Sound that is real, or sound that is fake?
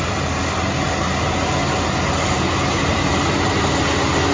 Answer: real